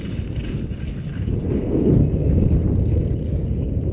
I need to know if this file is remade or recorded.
recorded